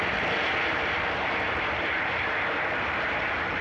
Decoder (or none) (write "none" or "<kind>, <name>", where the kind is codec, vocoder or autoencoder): none